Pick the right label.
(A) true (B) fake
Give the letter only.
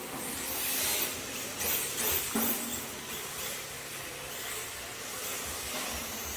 A